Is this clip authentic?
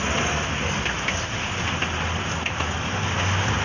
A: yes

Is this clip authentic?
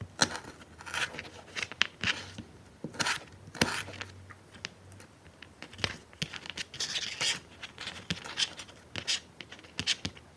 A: yes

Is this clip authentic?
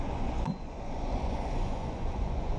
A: no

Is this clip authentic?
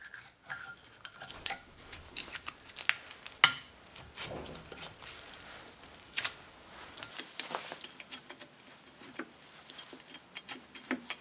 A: yes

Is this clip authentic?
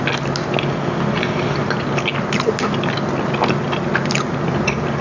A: yes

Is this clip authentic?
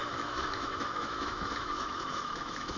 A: no